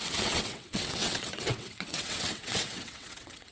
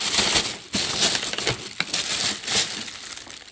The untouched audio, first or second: second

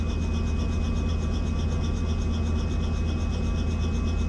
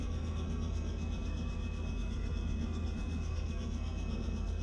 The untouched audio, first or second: first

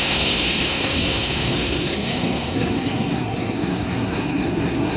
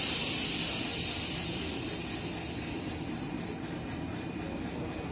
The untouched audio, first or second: second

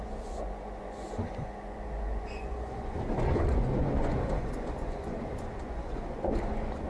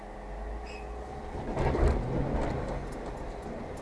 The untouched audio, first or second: second